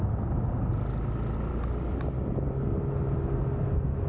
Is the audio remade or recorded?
recorded